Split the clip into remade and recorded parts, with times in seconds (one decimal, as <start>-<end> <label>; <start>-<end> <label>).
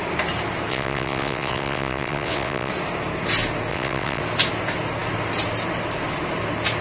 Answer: 0.0-0.7 recorded; 0.7-2.7 remade; 2.7-3.7 recorded; 3.7-4.2 remade; 4.2-6.8 recorded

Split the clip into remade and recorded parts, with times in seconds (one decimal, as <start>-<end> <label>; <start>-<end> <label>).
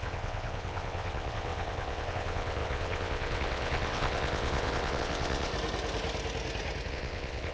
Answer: 0.0-5.5 remade; 5.5-6.9 recorded; 6.9-7.5 remade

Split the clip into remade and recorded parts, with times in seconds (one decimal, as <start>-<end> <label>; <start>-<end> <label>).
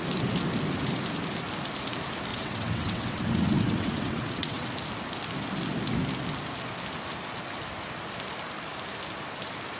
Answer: 0.0-2.3 recorded; 2.3-4.7 remade; 4.7-9.8 recorded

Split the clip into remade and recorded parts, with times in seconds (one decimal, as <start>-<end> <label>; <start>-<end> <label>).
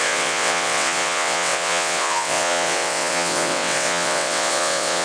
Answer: 0.0-5.0 remade